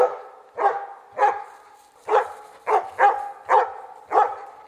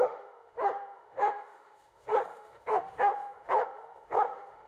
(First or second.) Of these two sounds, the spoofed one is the second